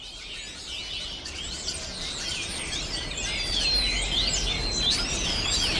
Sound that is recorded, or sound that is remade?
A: recorded